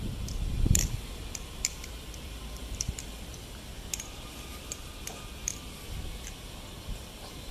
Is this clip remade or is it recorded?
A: remade